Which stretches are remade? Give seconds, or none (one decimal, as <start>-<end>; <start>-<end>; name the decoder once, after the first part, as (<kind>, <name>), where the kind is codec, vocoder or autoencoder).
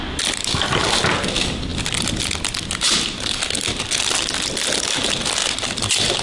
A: none